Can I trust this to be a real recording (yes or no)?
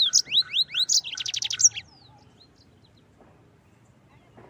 yes